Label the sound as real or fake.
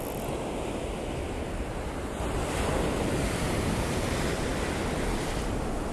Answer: real